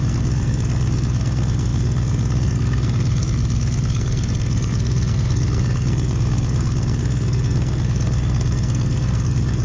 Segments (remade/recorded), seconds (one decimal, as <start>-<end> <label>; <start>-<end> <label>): 0.0-9.6 remade